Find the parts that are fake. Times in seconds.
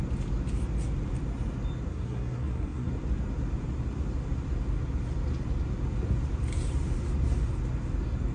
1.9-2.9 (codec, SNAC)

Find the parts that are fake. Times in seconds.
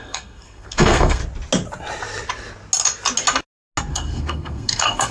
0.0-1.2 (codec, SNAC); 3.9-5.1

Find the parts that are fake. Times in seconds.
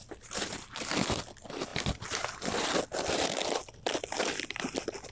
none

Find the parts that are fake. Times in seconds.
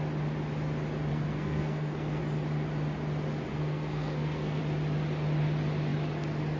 1.1-2.2 (codec, SNAC); 3.5-4.6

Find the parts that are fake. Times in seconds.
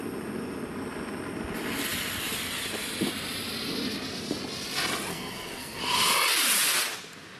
5.1-5.8 (codec, SNAC)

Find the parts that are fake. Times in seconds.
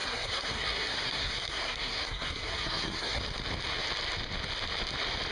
0.0-3.2 (codec, SNAC)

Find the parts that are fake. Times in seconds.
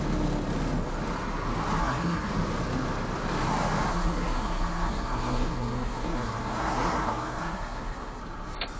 1.8-2.3 (codec, SNAC); 3.9-8.2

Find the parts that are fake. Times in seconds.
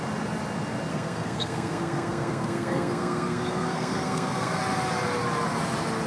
0.9-4.6 (codec, SNAC)